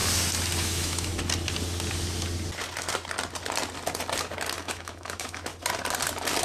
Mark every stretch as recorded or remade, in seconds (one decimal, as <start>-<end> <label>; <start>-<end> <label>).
0.0-0.6 recorded; 0.6-1.1 remade; 1.1-4.6 recorded; 4.6-5.5 remade; 5.5-6.4 recorded

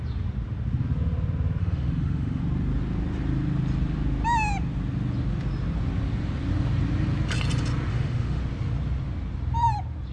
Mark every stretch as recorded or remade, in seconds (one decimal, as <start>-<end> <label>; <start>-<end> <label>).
0.0-1.6 recorded; 1.6-2.4 remade; 2.4-7.9 recorded; 7.9-8.4 remade; 8.4-10.1 recorded

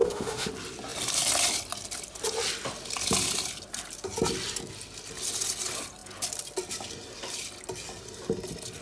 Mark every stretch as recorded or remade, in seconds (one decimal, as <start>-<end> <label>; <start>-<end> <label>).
0.0-0.5 remade; 0.5-8.8 recorded

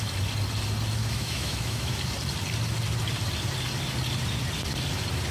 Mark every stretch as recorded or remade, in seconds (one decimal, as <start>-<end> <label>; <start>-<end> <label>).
0.0-1.0 recorded; 1.0-2.0 remade; 2.0-5.3 recorded

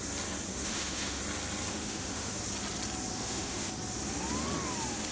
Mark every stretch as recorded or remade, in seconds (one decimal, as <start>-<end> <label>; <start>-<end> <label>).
0.0-0.5 recorded; 0.5-1.2 remade; 1.2-1.7 recorded; 1.7-2.4 remade; 2.4-3.1 recorded; 3.1-3.7 remade; 3.7-5.1 recorded